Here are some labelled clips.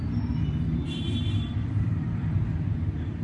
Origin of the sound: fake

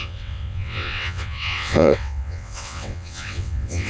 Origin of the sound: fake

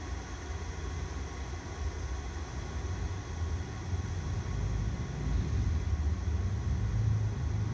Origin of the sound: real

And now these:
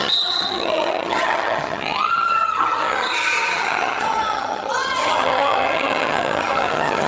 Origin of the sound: fake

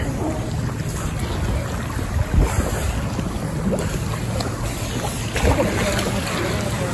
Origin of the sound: real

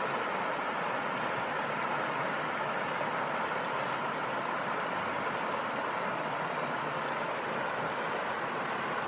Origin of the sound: real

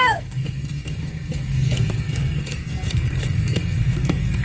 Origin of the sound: fake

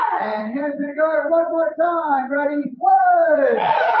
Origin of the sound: fake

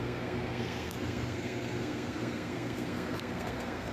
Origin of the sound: fake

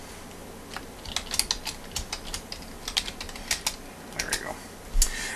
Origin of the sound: real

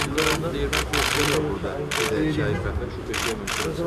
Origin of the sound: real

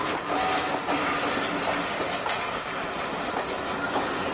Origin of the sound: real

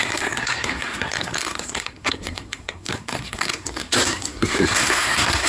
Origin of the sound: fake